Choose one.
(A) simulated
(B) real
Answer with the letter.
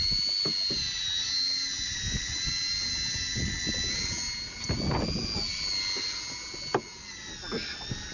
B